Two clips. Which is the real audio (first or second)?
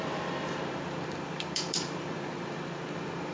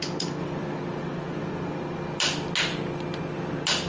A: second